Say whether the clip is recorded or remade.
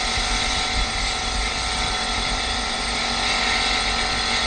recorded